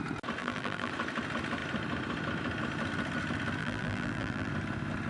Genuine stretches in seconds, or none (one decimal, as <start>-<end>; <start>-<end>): 0.0-0.4; 0.9-3.6; 4.5-5.1